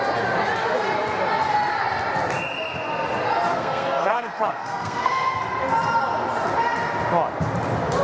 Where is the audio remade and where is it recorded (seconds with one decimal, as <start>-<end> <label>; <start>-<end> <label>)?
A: 0.0-3.5 recorded; 3.5-5.4 remade; 5.4-8.0 recorded